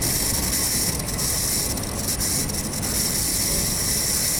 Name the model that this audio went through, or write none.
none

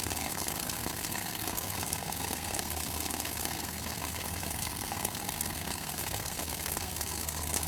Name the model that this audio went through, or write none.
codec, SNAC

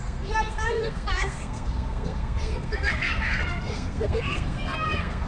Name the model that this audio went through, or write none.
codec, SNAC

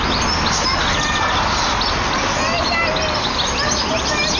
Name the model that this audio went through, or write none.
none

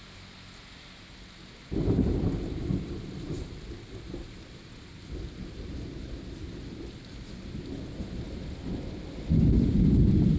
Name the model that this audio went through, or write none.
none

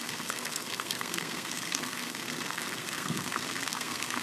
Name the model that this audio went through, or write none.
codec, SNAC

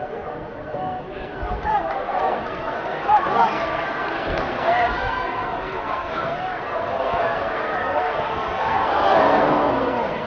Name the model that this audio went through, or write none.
codec, SNAC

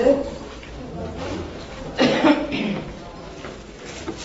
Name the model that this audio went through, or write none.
vocoder, BigVGAN v2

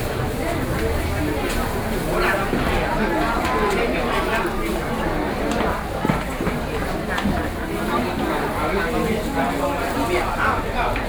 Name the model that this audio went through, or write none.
none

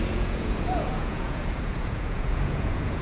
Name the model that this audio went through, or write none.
vocoder, Vocos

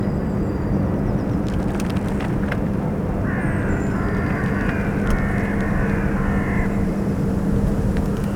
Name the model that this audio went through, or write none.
none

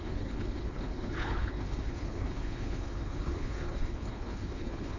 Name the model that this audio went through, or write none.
codec, HILCodec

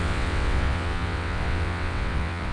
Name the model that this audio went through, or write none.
vocoder, WaveNeXt